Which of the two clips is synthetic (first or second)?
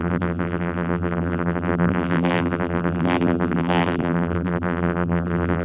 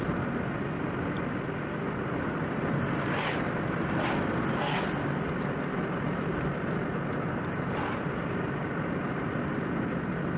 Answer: first